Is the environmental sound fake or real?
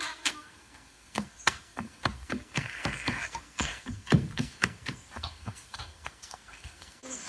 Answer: fake